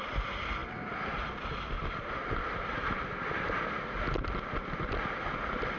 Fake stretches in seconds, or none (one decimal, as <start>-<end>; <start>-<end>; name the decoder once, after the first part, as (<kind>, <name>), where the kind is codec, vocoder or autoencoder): none